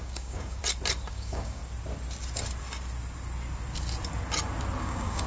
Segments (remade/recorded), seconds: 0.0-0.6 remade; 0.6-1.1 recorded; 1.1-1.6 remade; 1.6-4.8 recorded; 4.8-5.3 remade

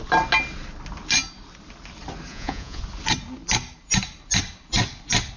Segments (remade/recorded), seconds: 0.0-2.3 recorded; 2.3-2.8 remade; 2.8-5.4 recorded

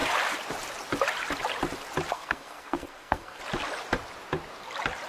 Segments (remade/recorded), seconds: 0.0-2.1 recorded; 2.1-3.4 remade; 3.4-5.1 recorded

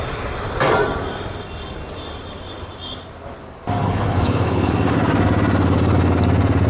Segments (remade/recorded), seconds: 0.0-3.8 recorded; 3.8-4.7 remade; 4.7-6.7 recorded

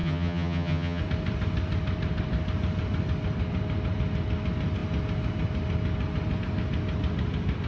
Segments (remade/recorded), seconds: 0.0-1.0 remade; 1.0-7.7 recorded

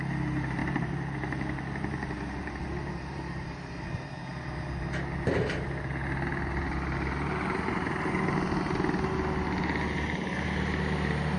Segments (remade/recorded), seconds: 0.0-0.6 recorded; 0.6-4.8 remade; 4.8-11.4 recorded

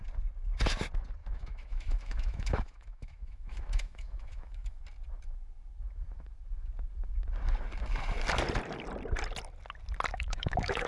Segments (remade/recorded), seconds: 0.0-1.2 recorded; 1.2-4.8 remade; 4.8-10.1 recorded; 10.1-10.9 remade

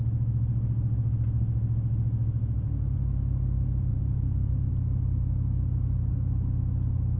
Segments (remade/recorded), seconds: 0.0-3.9 recorded; 3.9-4.7 remade; 4.7-7.2 recorded